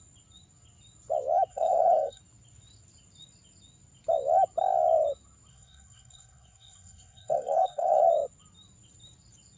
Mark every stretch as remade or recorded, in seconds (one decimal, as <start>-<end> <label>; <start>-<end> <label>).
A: 0.0-1.5 recorded; 1.5-2.2 remade; 2.2-5.5 recorded; 5.5-8.1 remade; 8.1-9.6 recorded